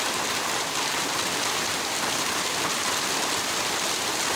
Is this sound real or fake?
fake